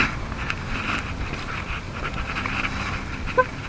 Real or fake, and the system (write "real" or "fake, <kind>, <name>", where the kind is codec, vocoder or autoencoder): real